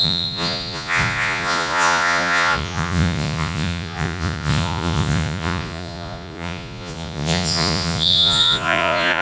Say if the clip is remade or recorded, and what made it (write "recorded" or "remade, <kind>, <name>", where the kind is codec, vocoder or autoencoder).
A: remade, vocoder, Vocos